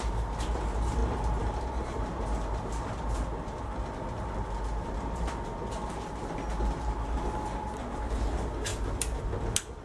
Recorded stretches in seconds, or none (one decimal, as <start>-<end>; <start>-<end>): 0.0-9.8